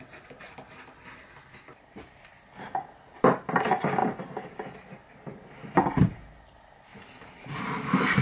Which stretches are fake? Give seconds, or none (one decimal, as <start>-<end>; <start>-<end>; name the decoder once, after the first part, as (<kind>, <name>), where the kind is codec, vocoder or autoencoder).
none